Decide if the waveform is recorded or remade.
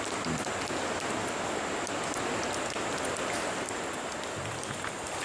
recorded